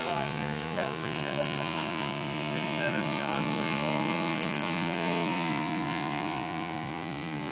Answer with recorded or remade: remade